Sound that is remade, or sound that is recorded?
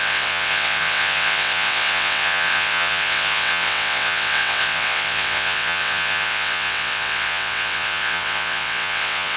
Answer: remade